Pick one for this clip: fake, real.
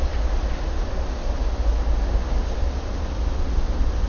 real